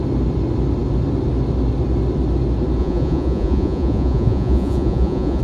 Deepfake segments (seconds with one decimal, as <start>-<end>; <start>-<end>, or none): 2.8-5.4